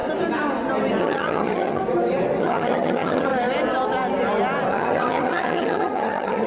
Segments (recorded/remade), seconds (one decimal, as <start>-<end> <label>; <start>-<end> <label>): 0.0-1.0 recorded; 1.0-1.8 remade; 1.8-2.4 recorded; 2.4-3.3 remade; 3.3-4.7 recorded; 4.7-6.5 remade